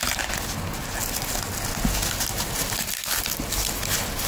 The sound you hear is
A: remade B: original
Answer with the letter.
B